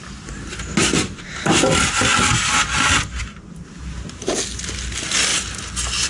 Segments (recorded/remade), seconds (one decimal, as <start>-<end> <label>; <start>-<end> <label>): 0.0-6.1 recorded